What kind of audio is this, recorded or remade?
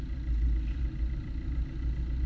recorded